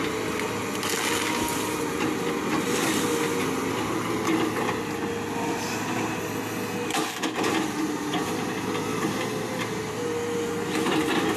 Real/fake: real